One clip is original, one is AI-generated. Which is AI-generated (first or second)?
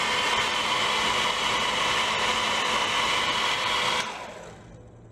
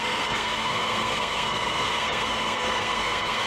second